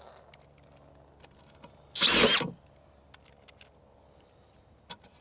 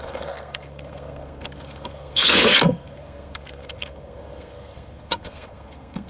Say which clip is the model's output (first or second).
second